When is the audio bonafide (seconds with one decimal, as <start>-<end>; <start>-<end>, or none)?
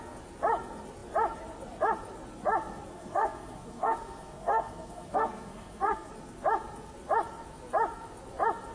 0.0-2.9; 6.1-8.7